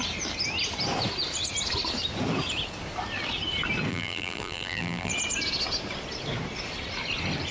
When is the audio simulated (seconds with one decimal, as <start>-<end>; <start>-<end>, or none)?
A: 3.9-5.1